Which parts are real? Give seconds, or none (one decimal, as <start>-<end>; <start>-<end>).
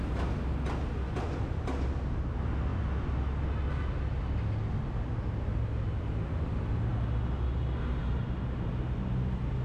0.0-9.6